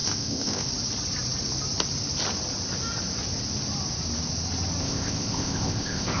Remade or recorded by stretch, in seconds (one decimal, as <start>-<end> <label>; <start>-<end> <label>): 0.0-0.7 remade; 0.7-4.8 recorded; 4.8-6.2 remade